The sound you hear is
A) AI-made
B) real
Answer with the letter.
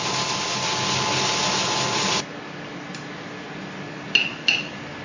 B